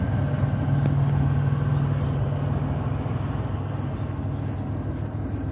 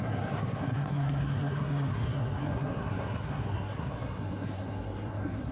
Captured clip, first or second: first